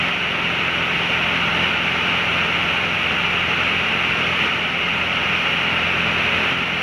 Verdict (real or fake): real